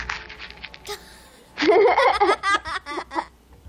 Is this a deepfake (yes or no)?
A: no